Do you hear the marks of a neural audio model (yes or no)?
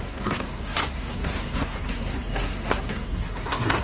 yes